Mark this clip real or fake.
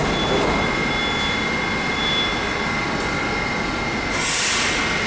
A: real